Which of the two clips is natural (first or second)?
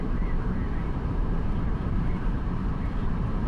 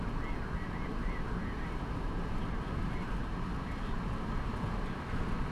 second